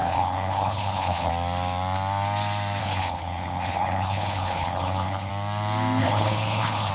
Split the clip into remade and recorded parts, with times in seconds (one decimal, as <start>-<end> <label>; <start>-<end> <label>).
0.0-1.3 remade; 1.3-2.8 recorded; 2.8-5.3 remade; 5.3-6.0 recorded; 6.0-6.9 remade